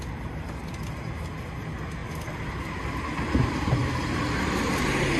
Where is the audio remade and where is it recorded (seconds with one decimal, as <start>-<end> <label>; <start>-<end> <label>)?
0.0-5.2 recorded